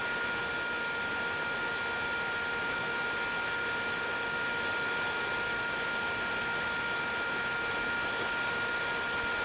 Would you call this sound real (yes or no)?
yes